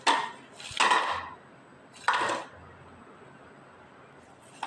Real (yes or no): yes